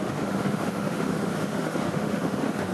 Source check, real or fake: fake